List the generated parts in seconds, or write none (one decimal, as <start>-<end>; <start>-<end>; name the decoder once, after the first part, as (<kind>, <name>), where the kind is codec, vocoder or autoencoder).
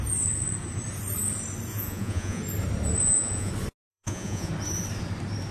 1.7-2.4 (vocoder, Vocos); 3.0-3.5; 3.9-4.5